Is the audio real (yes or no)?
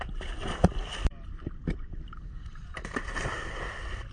yes